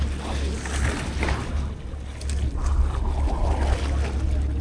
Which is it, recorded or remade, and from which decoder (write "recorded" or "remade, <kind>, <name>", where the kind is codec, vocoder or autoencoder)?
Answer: recorded